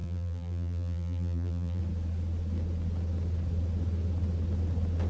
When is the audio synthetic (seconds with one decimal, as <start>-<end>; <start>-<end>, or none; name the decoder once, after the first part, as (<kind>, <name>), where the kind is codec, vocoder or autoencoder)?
0.0-1.8 (vocoder, BigVGAN v2)